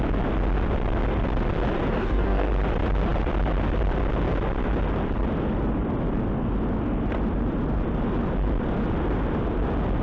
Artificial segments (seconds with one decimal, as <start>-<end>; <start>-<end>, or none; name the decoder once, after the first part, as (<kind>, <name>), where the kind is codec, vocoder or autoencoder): 1.9-2.5 (codec, DAC)